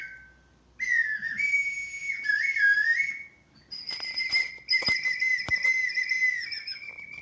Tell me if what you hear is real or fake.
real